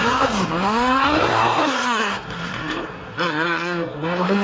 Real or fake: fake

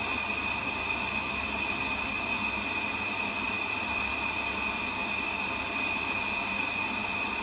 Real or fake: real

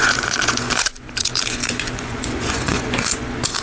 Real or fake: fake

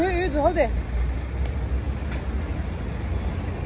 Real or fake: real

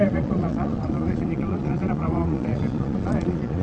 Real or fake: fake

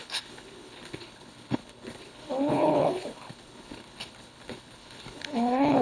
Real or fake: fake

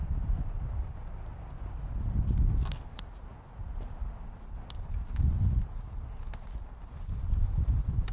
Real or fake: real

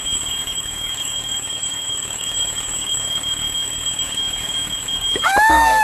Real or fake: fake